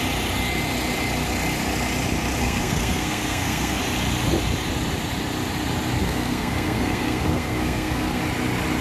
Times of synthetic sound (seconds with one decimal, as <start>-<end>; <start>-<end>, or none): 2.4-3.8; 6.0-8.2

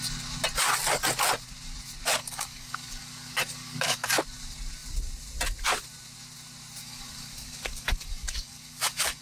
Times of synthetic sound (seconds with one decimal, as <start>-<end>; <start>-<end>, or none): 2.2-4.2; 6.8-9.2

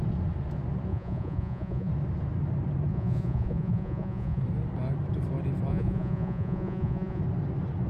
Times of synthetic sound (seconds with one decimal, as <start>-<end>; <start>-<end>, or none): 0.9-1.9; 2.9-4.4; 5.7-7.2

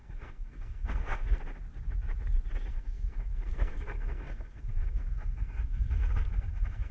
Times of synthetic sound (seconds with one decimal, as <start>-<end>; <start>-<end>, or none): 0.0-1.4; 2.7-6.9

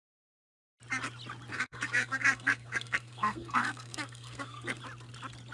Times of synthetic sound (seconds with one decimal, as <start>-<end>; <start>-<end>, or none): 1.5-4.8